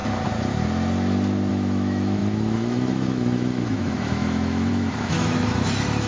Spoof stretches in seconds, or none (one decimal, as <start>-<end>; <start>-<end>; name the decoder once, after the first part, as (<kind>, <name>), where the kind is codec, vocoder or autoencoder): 1.5-6.1 (autoencoder, DAC-VAE)